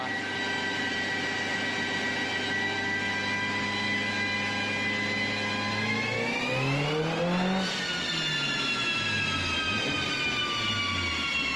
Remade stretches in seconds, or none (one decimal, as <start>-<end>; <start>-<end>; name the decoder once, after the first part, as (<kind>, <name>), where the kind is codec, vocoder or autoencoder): none